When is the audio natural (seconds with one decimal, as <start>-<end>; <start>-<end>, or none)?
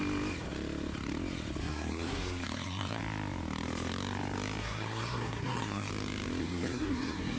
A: 0.0-1.6; 3.0-4.6; 5.9-6.4